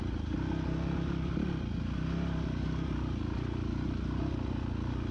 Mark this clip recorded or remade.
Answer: recorded